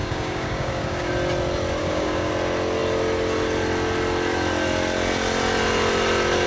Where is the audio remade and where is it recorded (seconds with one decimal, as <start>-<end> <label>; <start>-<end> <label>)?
0.0-1.1 remade; 1.1-1.8 recorded; 1.8-2.3 remade; 2.3-6.5 recorded